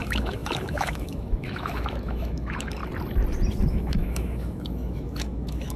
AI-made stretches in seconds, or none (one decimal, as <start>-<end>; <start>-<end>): 0.0-2.8; 3.7-5.8